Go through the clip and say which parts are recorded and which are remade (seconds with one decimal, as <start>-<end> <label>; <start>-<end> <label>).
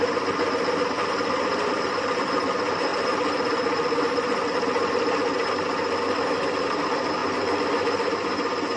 0.0-1.0 recorded; 1.0-2.3 remade; 2.3-2.9 recorded; 2.9-6.0 remade; 6.0-8.8 recorded